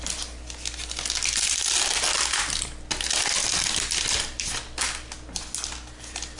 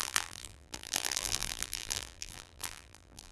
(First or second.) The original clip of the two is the first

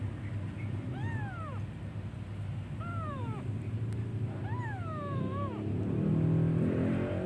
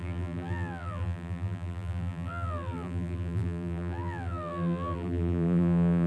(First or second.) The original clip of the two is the first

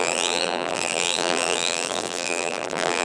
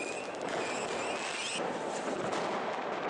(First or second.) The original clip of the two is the second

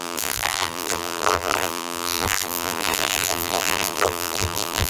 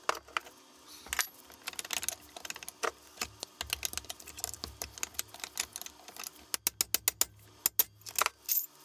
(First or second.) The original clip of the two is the second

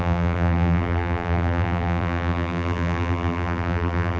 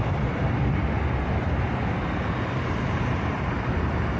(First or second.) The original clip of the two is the second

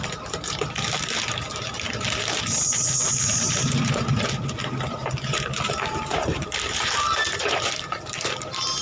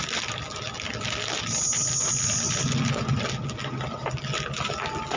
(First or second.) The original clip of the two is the second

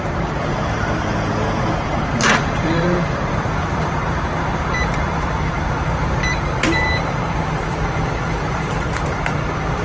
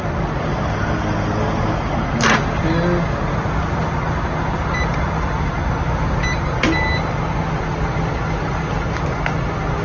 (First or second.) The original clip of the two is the second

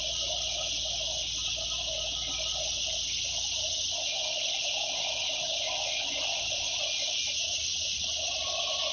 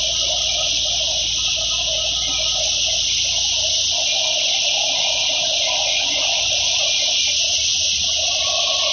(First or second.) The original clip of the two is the first